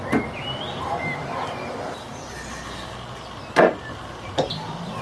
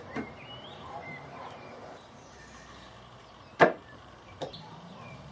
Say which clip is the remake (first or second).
second